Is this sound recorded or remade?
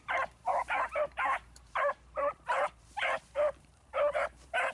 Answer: remade